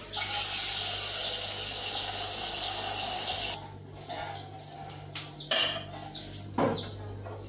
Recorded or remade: recorded